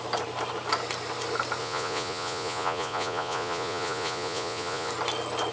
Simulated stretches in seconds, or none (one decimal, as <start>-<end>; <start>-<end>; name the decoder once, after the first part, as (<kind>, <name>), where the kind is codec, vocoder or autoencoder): 1.6-4.9 (vocoder, Vocos)